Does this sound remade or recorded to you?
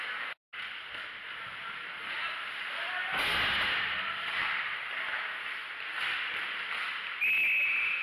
recorded